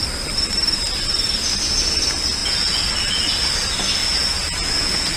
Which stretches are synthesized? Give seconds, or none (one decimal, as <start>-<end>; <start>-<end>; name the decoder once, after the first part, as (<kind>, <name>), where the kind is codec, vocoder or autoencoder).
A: 2.4-2.9 (vocoder, Vocos); 4.0-5.2